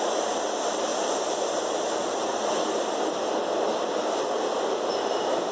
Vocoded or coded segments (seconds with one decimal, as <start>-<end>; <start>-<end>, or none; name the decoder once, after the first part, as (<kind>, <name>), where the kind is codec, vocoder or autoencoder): none